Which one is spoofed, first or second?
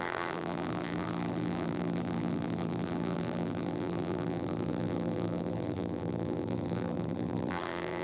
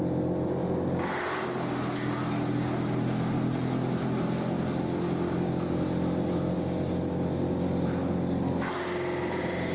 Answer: first